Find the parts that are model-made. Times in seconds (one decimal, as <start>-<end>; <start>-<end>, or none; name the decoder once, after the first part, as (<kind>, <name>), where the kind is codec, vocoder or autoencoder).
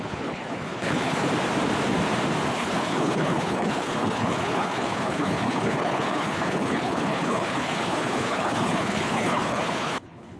0.0-1.3 (codec, HILCodec); 2.5-10.4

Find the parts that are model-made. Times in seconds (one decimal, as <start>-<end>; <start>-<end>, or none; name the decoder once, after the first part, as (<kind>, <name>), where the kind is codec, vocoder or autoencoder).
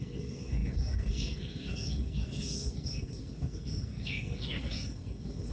0.0-5.5 (codec, SNAC)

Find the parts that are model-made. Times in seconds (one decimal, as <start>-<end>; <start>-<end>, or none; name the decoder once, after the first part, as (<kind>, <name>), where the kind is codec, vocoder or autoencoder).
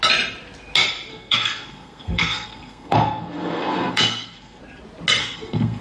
1.1-4.6 (codec, SNAC); 5.2-5.8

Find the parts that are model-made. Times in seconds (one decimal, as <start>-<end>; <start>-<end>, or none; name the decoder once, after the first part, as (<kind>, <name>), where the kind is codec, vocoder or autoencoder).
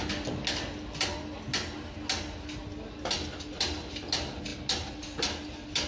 none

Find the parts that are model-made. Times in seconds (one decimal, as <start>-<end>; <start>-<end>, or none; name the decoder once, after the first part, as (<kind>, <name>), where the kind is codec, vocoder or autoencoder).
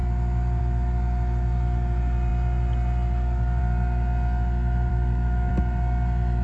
4.9-5.5 (autoencoder, DAC-VAE)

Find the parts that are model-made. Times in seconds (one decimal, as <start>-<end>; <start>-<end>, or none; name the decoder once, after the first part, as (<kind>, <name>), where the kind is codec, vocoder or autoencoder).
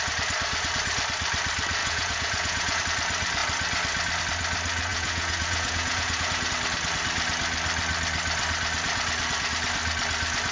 1.8-2.8 (vocoder, Vocos); 4.9-6.5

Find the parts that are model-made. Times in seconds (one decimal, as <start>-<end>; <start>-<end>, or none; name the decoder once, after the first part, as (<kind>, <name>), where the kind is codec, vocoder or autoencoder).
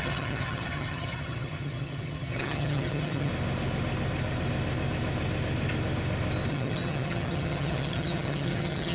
0.0-3.3 (vocoder, HiFi-GAN); 6.5-8.9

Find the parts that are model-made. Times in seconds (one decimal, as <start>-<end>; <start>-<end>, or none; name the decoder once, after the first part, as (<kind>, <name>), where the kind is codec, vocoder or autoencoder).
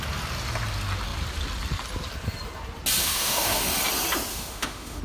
3.0-3.6 (autoencoder, DAC-VAE); 4.3-5.0